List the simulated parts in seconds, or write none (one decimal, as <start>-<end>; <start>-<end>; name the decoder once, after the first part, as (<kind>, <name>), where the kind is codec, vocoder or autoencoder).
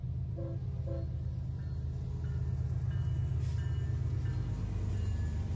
none